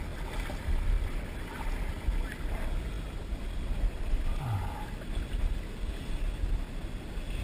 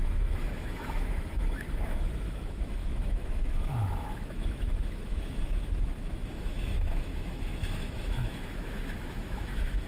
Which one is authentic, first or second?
first